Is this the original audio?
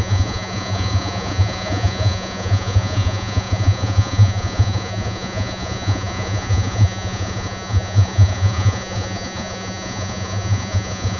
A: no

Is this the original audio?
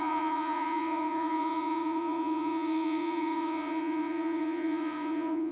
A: no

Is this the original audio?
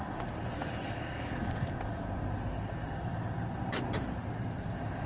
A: yes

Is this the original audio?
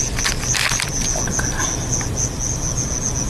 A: yes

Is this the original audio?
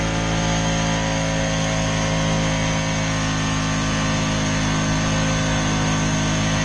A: yes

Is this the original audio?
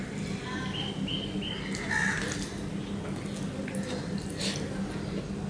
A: yes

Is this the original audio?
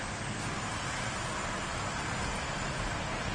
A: yes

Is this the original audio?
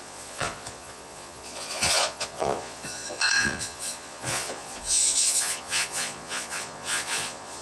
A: no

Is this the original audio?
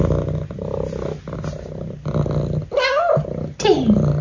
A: yes